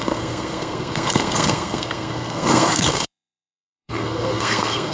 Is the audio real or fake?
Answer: fake